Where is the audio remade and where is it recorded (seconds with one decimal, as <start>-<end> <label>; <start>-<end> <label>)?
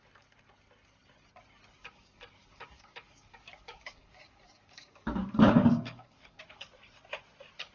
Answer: 0.0-1.8 recorded; 1.8-6.4 remade; 6.4-7.7 recorded